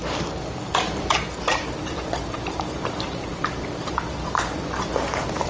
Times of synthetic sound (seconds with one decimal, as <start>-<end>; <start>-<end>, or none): 1.3-5.5